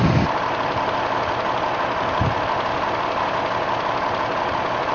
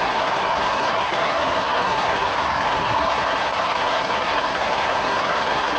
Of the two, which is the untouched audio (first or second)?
first